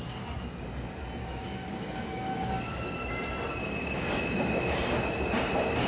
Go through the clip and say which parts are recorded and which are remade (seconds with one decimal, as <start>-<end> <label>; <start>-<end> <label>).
0.0-1.2 recorded; 1.2-3.1 remade; 3.1-3.6 recorded; 3.6-4.2 remade; 4.2-5.9 recorded